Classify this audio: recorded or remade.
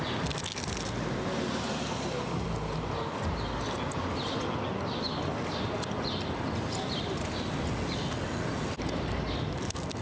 recorded